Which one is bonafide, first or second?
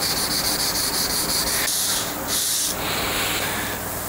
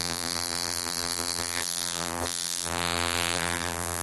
first